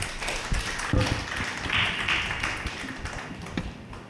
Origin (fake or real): real